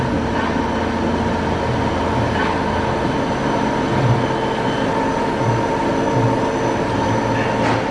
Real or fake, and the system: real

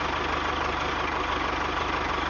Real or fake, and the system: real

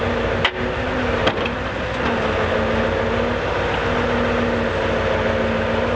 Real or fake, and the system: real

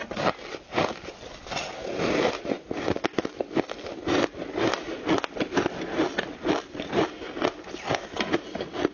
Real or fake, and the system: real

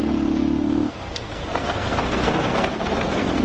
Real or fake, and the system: fake, codec, SNAC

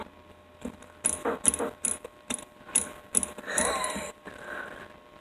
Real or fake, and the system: real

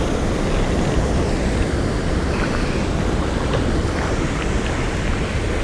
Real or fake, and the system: real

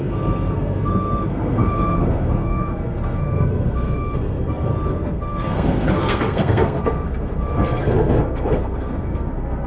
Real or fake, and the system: fake, codec, SNAC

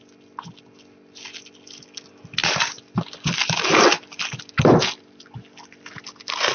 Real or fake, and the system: real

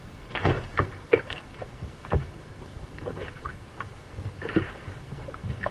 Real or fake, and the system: fake, codec, SNAC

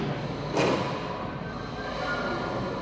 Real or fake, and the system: real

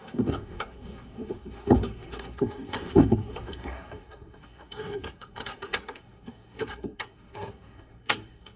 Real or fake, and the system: fake, codec, SNAC